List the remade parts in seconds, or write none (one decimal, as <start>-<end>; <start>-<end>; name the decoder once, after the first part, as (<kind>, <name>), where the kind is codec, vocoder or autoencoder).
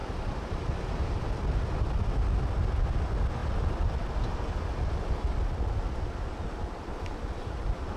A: 0.0-0.6 (vocoder, BigVGAN v2)